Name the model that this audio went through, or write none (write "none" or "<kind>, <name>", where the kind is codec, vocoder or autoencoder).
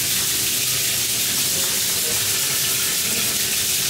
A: none